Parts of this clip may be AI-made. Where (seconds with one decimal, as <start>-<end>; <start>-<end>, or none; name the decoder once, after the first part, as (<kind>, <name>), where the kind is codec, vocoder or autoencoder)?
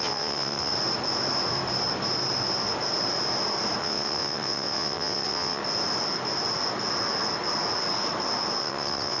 0.0-0.7 (vocoder, WaveNeXt); 3.8-5.6; 8.6-9.2